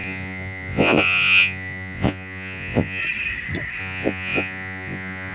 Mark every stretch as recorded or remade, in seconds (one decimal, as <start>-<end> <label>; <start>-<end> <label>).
0.0-3.0 remade; 3.0-3.8 recorded; 3.8-5.3 remade